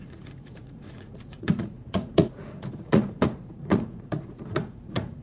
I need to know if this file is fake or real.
fake